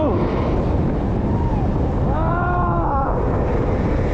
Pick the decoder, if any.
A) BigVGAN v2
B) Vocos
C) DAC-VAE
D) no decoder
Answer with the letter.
D